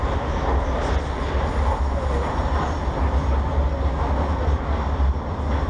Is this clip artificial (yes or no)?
no